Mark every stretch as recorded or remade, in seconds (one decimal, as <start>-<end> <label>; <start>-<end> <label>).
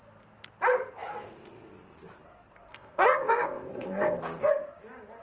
0.0-2.7 recorded; 2.7-4.2 remade; 4.2-5.2 recorded